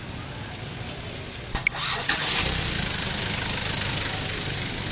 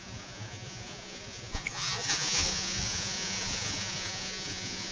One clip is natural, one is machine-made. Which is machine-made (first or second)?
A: second